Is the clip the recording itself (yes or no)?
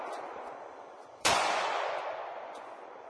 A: no